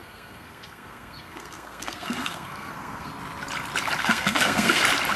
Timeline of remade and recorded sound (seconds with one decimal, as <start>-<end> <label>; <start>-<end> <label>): 0.0-3.1 remade; 3.1-4.0 recorded; 4.0-4.8 remade; 4.8-5.2 recorded

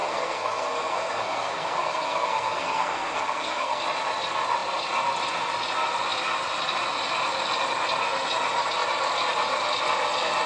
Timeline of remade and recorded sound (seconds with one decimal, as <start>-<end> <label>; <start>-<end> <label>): 0.0-3.8 remade; 3.8-10.5 recorded

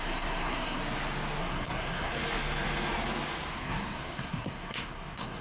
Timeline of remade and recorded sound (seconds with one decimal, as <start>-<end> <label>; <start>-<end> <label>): 0.0-0.8 remade; 0.8-1.4 recorded; 1.4-2.1 remade; 2.1-3.5 recorded; 3.5-5.4 remade

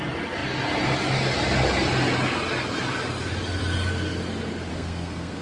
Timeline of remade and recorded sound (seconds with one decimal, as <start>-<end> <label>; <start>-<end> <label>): 0.0-4.7 recorded; 4.7-5.4 remade

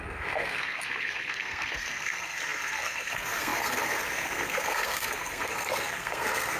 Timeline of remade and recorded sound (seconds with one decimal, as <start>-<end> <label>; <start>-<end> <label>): 0.0-6.6 remade

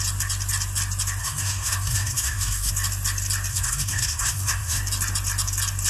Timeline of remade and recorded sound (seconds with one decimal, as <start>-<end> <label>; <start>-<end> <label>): 0.0-1.2 recorded; 1.2-2.7 remade; 2.7-3.5 recorded; 3.5-4.8 remade; 4.8-5.9 recorded